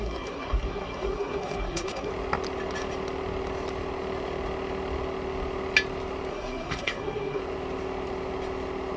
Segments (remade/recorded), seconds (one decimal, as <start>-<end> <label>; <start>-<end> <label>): 0.0-2.1 remade; 2.1-6.3 recorded; 6.3-7.4 remade; 7.4-9.0 recorded